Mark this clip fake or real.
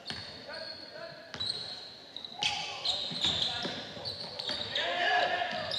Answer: real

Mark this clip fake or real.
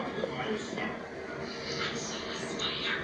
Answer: real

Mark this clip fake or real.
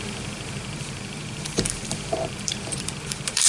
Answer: fake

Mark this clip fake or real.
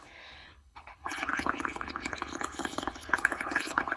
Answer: fake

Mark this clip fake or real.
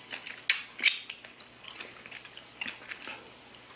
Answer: real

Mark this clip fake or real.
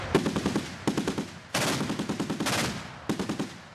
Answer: real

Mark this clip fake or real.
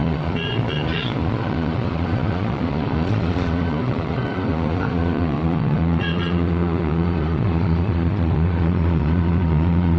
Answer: fake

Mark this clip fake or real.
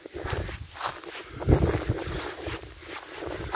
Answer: real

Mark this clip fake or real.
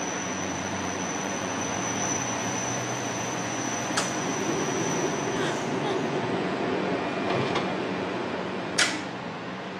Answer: fake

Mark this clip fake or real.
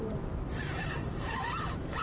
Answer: fake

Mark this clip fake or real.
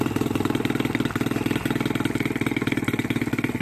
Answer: real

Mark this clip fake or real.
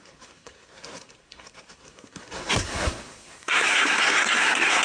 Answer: fake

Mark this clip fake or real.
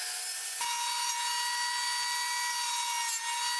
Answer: real